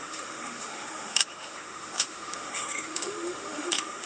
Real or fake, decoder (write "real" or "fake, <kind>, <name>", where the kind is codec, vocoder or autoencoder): fake, autoencoder, DAC-VAE